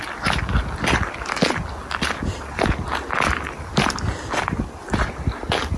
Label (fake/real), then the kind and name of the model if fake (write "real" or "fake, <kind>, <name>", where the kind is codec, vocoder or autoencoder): real